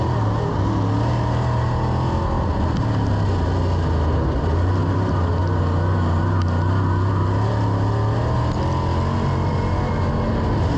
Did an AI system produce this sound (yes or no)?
no